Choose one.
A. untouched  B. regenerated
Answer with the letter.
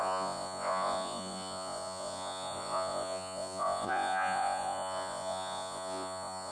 B